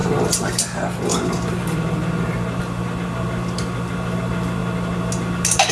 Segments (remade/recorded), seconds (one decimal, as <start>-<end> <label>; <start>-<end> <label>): 0.0-5.7 recorded